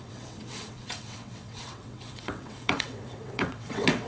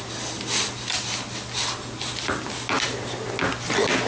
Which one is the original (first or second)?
second